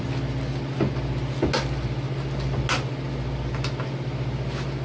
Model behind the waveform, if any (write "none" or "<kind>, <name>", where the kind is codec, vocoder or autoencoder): none